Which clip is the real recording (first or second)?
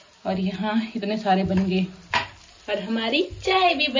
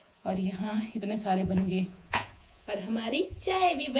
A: first